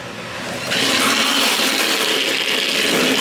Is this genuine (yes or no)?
yes